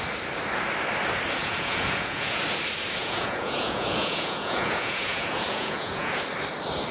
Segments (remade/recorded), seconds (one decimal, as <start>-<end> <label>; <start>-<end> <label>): 0.0-1.4 recorded; 1.4-2.4 remade; 2.4-3.0 recorded; 3.0-6.2 remade; 6.2-6.9 recorded